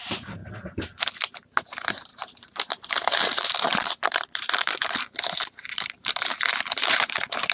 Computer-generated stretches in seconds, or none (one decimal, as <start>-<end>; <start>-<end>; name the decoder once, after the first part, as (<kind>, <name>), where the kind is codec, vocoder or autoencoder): 0.0-0.4 (vocoder, BigVGAN v2); 1.6-7.5